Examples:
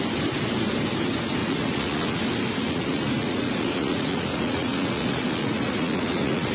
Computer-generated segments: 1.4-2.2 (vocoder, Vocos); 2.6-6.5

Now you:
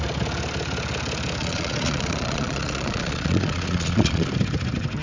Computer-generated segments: 1.4-4.3 (vocoder, Vocos)

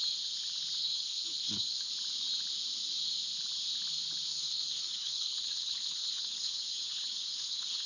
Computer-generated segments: 0.8-1.9 (codec, HILCodec); 4.3-7.9

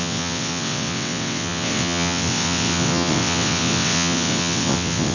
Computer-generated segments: 0.0-5.1 (vocoder, WaveNeXt)

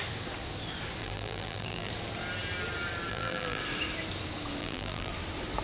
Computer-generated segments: 1.0-1.9 (vocoder, BigVGAN v2); 3.1-3.6; 4.6-5.1

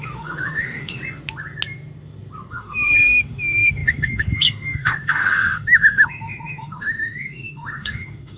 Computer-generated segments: 0.0-1.0 (autoencoder, DAC-VAE); 2.5-8.4